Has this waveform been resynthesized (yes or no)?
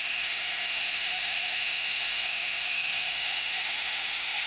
yes